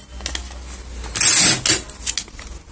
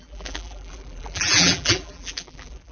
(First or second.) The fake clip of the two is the second